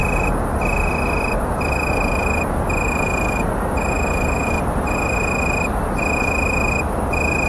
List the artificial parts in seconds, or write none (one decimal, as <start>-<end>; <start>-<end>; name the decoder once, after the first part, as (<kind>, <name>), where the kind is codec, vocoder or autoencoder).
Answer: none